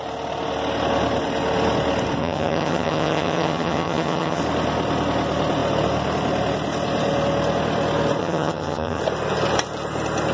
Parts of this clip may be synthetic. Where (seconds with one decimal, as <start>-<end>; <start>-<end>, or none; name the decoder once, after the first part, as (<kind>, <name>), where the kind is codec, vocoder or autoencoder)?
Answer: 2.2-4.4 (vocoder, HiFi-GAN); 8.2-9.0